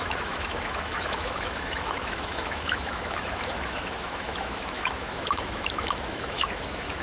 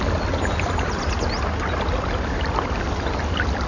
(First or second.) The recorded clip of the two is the second